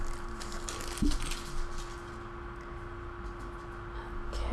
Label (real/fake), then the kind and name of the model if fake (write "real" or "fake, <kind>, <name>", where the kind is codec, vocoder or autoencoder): real